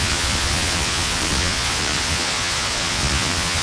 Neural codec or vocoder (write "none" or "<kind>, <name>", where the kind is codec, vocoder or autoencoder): vocoder, Vocos